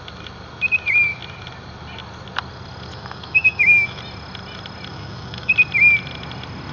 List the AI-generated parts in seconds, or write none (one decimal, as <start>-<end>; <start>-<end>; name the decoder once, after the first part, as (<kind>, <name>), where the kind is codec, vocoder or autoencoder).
2.9-4.0 (autoencoder, DAC-VAE); 4.9-5.5